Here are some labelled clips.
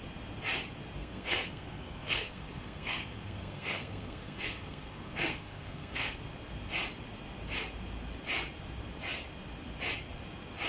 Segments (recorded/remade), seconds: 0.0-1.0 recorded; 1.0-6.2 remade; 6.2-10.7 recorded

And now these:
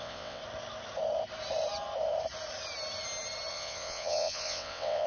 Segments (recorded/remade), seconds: 0.0-0.4 remade; 0.4-3.5 recorded; 3.5-5.1 remade

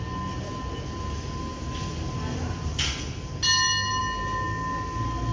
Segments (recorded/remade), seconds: 0.0-5.3 recorded

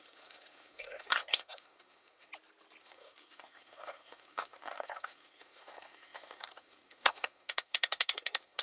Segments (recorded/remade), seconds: 0.0-2.3 remade; 2.3-2.8 recorded; 2.8-8.6 remade

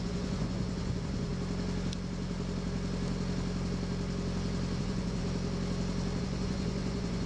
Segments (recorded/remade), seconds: 0.0-1.3 remade; 1.3-4.8 recorded; 4.8-5.2 remade; 5.2-6.2 recorded; 6.2-7.3 remade

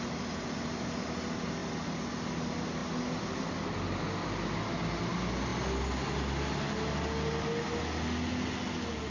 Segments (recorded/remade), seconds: 0.0-9.1 recorded

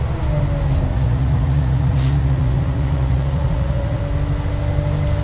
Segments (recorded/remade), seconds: 0.0-0.9 recorded; 0.9-4.0 remade; 4.0-5.2 recorded

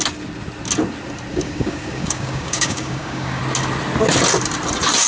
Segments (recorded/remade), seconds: 0.0-1.3 recorded; 1.3-3.4 remade; 3.4-5.1 recorded